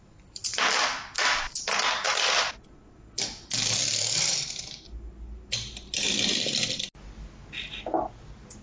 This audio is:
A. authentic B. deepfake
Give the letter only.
A